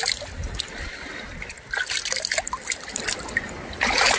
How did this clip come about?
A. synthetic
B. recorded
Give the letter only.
A